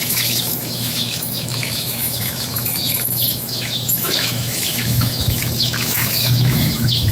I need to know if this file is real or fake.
fake